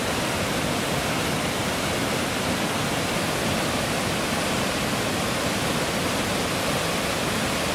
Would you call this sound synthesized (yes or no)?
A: yes